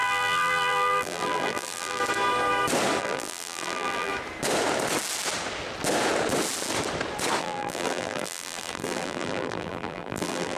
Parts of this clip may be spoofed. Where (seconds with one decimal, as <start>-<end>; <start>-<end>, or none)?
0.0-2.0; 3.0-4.1; 7.4-10.6